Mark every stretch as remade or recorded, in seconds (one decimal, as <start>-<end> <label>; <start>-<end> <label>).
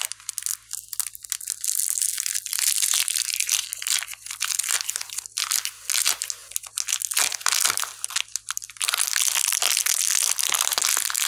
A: 0.0-11.3 recorded